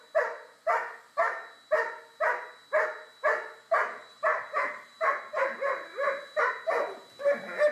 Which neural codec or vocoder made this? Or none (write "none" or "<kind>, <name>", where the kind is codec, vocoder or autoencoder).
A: none